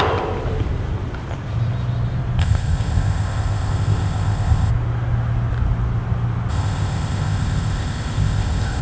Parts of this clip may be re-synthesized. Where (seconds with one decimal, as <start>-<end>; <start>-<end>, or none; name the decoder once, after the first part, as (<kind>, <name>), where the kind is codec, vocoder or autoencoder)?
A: 2.4-4.7 (codec, ZipCodec); 6.5-8.8